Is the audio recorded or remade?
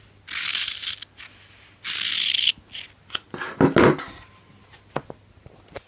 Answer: recorded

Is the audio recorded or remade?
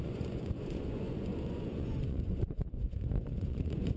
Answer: remade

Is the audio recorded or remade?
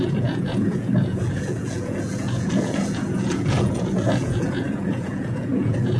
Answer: remade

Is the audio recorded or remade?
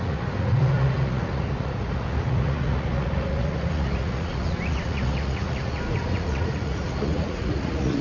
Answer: remade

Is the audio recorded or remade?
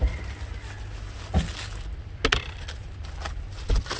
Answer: recorded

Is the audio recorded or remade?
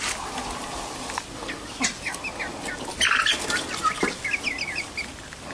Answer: recorded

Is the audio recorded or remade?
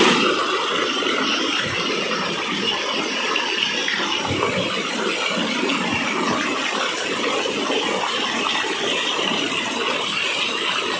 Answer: recorded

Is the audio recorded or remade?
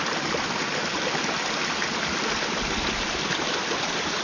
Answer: recorded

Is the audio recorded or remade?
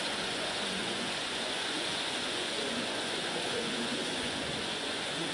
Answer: remade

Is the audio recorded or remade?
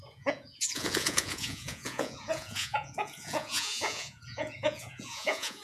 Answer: remade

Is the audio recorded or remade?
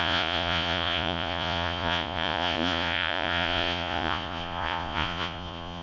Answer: remade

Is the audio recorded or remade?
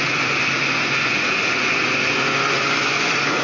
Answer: remade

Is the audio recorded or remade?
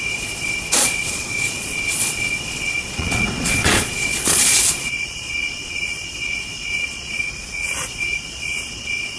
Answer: remade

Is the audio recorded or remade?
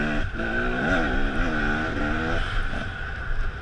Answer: recorded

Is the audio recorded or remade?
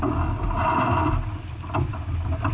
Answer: recorded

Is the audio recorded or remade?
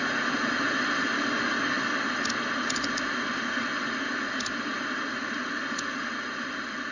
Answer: recorded